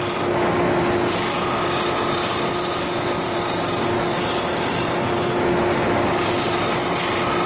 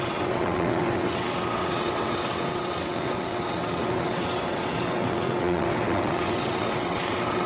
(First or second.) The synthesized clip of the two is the second